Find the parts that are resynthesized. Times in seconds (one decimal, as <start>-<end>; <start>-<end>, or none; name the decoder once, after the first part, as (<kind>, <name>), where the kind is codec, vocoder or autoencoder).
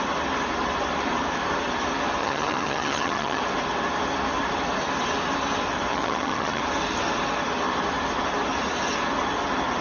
2.2-3.4 (vocoder, HiFi-GAN); 5.9-6.6